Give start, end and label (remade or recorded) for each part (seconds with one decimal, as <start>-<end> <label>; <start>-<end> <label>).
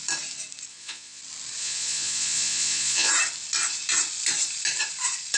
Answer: 0.0-0.7 recorded; 0.7-1.2 remade; 1.2-1.6 recorded; 1.6-3.1 remade; 3.1-5.4 recorded